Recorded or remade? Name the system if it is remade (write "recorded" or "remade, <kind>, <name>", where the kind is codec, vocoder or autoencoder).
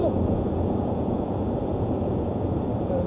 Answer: remade, vocoder, Vocos